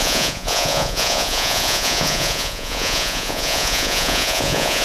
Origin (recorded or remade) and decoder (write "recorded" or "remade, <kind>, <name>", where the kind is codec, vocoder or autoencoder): remade, vocoder, Vocos